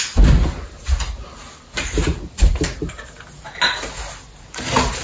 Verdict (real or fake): real